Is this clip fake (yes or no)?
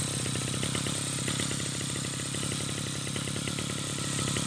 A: no